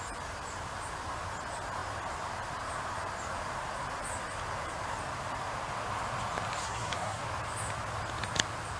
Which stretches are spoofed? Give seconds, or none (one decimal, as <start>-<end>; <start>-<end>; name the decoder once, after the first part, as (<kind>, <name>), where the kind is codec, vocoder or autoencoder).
6.6-7.2 (codec, SNAC)